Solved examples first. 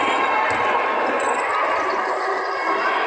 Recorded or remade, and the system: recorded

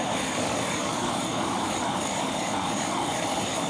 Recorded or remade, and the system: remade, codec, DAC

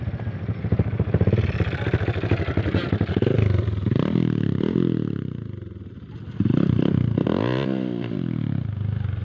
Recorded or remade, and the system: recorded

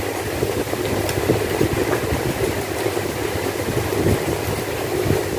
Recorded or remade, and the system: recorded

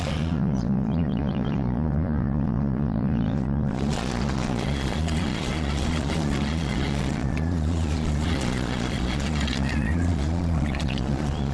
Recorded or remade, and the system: remade, vocoder, Vocos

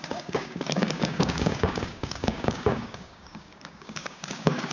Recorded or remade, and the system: remade, codec, DAC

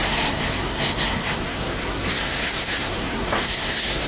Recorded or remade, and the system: remade, codec, SNAC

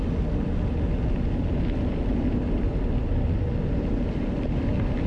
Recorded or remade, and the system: recorded